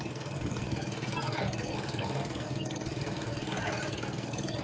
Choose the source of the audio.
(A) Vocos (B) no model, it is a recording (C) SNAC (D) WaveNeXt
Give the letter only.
C